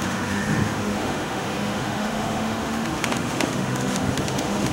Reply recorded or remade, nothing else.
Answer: remade